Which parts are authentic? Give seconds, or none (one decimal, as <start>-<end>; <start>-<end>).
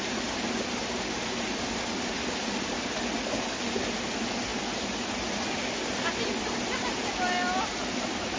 0.0-8.4